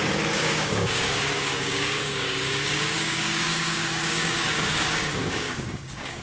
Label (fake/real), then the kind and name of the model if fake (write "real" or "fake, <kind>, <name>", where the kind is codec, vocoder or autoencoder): fake, codec, DAC